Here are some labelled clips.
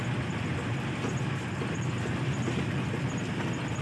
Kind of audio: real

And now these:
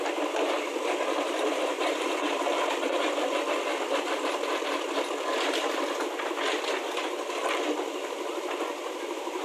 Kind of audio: fake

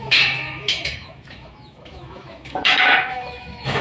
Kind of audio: fake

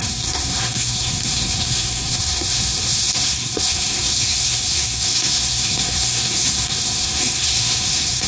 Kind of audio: fake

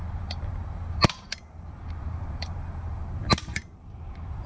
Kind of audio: fake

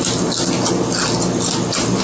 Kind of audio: real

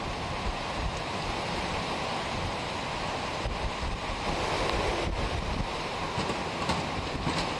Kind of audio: real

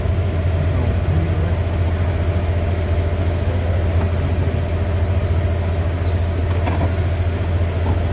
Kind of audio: real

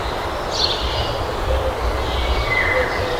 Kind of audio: real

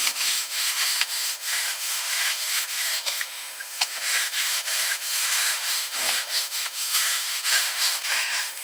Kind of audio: fake